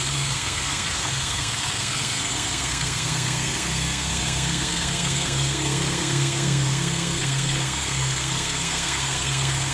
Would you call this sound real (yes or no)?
no